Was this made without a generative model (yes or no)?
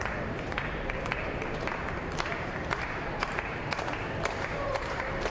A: no